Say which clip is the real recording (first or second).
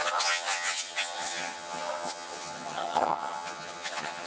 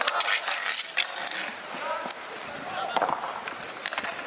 second